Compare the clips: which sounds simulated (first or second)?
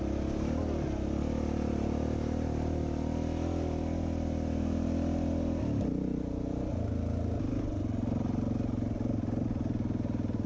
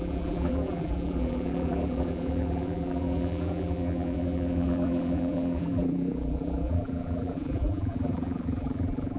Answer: second